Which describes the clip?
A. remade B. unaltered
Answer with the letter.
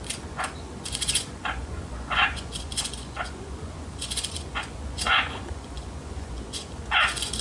A